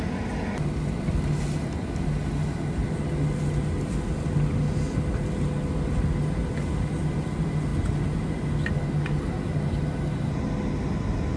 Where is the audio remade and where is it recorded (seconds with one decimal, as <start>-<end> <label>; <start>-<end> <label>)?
0.0-11.4 recorded